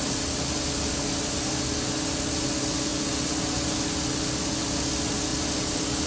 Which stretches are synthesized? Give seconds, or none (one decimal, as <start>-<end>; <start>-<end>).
none